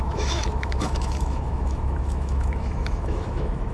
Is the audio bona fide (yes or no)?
no